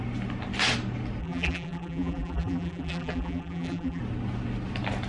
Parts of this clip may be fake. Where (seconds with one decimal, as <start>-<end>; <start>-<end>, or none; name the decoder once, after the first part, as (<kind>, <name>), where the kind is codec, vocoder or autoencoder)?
1.2-4.0 (vocoder, BigVGAN v2)